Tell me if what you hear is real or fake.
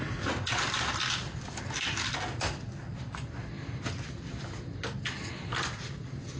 real